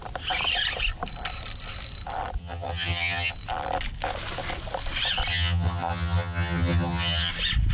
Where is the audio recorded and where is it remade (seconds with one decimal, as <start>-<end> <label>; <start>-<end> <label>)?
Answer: 0.0-2.4 recorded; 2.4-3.3 remade; 3.3-5.3 recorded; 5.3-7.3 remade; 7.3-7.7 recorded